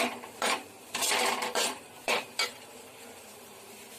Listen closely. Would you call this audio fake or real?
fake